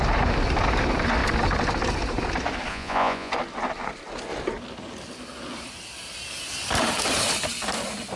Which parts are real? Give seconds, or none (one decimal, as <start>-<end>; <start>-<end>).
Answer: 0.0-2.7; 3.3-8.2